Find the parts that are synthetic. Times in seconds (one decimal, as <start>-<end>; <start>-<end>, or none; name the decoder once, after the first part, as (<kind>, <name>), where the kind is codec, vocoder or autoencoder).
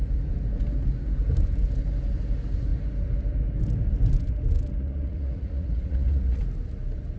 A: 4.8-6.4 (vocoder, Vocos)